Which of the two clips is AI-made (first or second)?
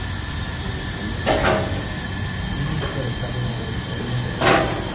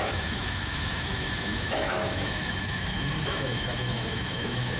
second